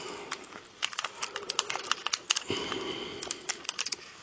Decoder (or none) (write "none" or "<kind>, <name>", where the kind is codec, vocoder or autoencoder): none